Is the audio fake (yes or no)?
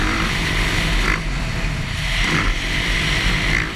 no